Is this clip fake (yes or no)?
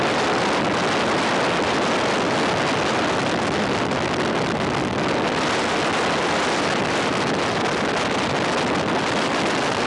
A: no